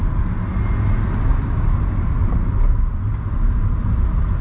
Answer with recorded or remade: recorded